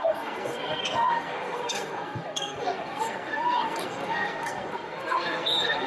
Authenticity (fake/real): fake